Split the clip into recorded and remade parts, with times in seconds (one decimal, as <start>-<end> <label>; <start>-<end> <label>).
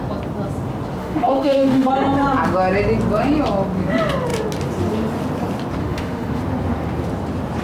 0.0-1.0 recorded; 1.0-1.9 remade; 1.9-5.8 recorded; 5.8-6.4 remade; 6.4-7.6 recorded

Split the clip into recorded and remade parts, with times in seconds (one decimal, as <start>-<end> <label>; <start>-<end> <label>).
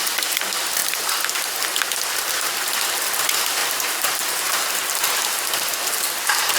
0.0-3.6 recorded; 3.6-4.1 remade; 4.1-6.6 recorded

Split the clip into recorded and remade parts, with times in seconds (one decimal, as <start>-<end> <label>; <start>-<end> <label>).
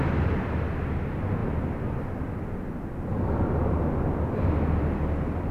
0.0-5.5 recorded